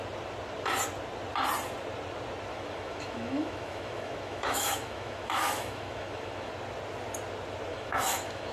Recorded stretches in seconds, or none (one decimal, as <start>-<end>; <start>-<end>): 0.0-2.5; 6.5-7.7